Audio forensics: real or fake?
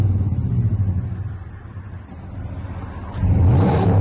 fake